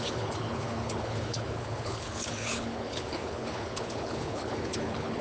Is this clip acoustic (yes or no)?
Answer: no